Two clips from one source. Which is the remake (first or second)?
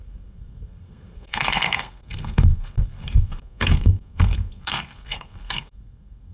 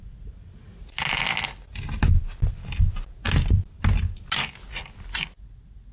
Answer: first